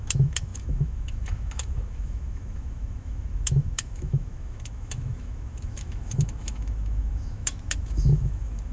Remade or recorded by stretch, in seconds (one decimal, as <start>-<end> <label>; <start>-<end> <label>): 0.0-8.7 remade